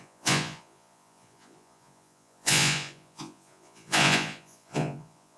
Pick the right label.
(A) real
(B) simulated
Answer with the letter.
B